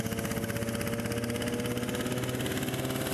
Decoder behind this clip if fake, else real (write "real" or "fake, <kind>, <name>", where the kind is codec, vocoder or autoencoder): real